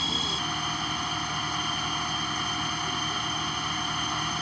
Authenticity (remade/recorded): recorded